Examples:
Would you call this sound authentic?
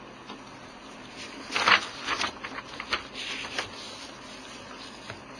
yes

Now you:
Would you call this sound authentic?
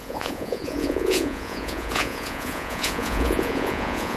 no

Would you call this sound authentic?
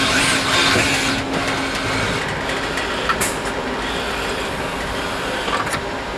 yes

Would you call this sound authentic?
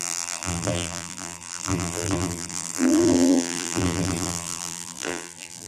no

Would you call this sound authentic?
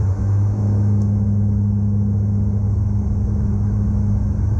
no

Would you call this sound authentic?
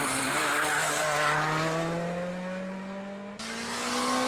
yes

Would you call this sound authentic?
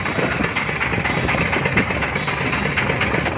yes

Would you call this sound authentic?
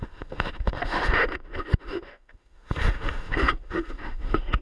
no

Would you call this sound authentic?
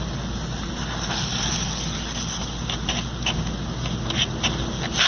yes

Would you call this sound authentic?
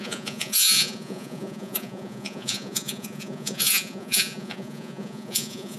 no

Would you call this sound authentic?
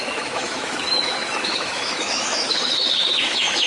no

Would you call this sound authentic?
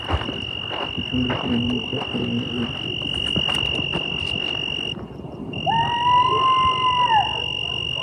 yes